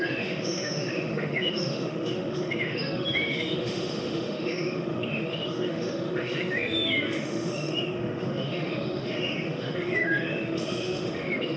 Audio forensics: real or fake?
fake